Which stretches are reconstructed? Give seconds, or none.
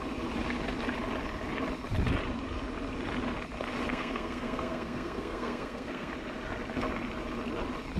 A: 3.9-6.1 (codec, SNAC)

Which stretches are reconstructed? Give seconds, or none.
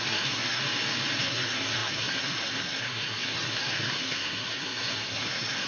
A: 0.0-0.6 (codec, SNAC); 1.2-5.7